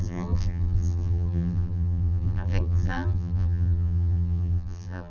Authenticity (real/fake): fake